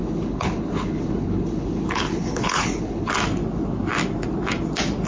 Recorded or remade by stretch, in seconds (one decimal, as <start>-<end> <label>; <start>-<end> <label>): 0.0-3.1 remade; 3.1-5.1 recorded